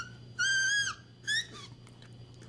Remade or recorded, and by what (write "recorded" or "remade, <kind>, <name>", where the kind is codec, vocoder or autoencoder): recorded